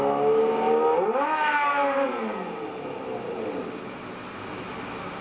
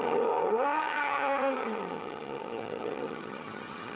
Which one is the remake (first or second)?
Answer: second